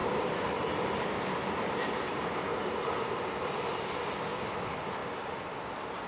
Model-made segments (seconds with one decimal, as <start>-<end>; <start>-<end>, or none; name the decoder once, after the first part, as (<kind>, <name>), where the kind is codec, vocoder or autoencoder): none